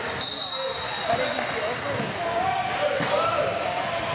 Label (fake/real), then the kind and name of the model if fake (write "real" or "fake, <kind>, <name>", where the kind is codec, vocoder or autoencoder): real